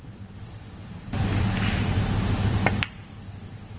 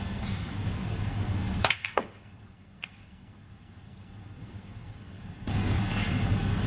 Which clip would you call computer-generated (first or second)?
second